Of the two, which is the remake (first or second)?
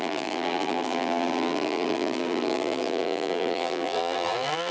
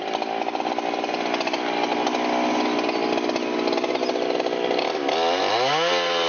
first